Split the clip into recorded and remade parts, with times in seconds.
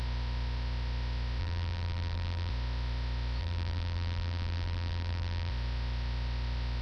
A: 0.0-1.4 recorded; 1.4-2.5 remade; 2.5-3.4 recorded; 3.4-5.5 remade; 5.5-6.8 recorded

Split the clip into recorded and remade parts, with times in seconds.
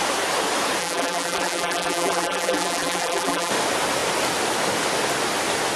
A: 0.0-0.8 recorded; 0.8-3.5 remade; 3.5-5.8 recorded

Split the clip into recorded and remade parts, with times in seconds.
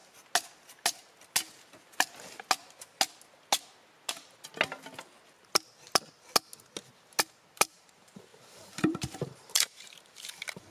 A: 0.0-4.1 recorded; 4.1-4.5 remade; 4.5-7.5 recorded; 7.5-10.7 remade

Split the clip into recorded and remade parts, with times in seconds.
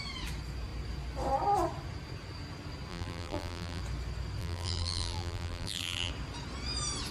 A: 0.0-2.9 recorded; 2.9-3.8 remade; 3.8-4.4 recorded; 4.4-6.1 remade; 6.1-7.1 recorded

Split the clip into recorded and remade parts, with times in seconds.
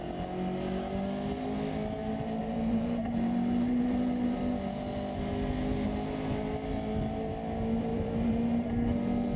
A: 0.0-2.4 recorded; 2.4-4.4 remade; 4.4-7.9 recorded; 7.9-8.7 remade; 8.7-9.4 recorded